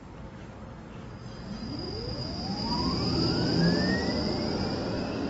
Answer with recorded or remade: recorded